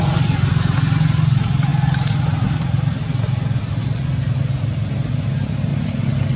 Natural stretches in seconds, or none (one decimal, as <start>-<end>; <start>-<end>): 0.0-6.4